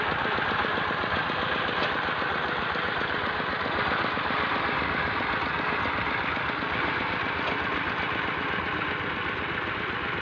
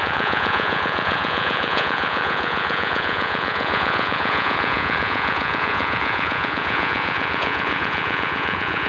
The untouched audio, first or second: first